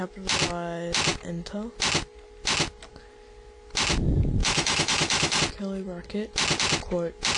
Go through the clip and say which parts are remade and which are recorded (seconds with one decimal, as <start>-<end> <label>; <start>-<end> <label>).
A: 0.0-4.4 recorded; 4.4-5.4 remade; 5.4-7.4 recorded